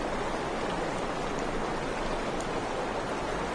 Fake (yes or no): no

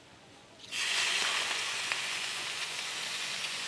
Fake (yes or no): yes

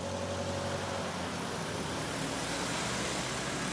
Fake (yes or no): no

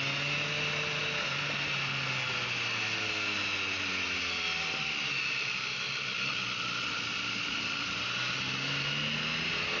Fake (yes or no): no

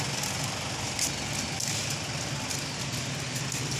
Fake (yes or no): no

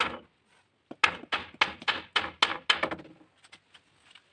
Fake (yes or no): no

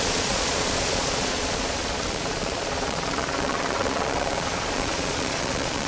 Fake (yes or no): yes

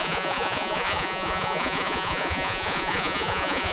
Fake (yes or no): yes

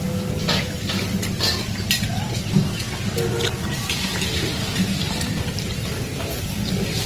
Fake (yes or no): no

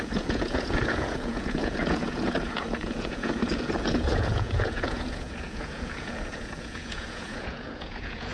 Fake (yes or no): yes